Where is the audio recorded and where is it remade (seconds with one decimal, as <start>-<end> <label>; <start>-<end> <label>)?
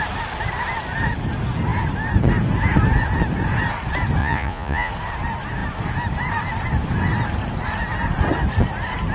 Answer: 0.0-4.2 recorded; 4.2-4.9 remade; 4.9-9.1 recorded